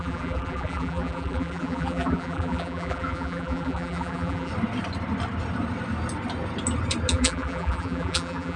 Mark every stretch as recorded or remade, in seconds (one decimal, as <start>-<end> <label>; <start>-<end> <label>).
0.0-4.5 remade; 4.5-7.1 recorded; 7.1-8.6 remade